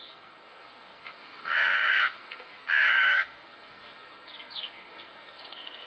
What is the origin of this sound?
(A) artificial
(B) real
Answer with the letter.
A